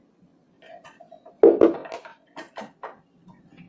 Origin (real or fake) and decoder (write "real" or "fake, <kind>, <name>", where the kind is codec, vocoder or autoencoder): real